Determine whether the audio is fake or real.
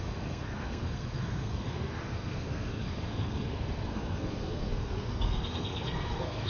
fake